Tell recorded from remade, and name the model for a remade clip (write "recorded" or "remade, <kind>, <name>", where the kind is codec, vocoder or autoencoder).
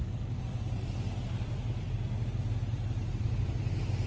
recorded